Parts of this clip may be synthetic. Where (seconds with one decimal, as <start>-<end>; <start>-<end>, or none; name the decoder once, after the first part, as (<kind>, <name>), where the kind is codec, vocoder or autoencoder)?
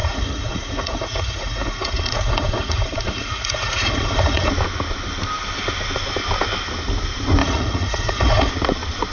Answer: 0.0-4.5 (vocoder, Vocos); 7.4-8.5